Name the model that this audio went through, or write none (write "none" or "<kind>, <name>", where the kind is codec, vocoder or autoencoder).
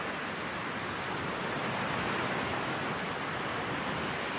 none